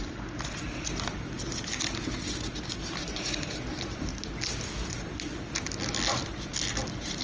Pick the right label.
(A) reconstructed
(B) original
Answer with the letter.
B